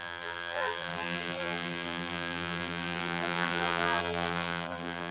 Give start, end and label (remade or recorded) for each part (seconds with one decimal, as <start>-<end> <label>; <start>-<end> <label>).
0.0-5.1 remade